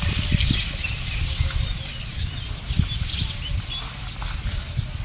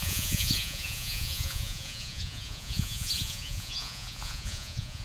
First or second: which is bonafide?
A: first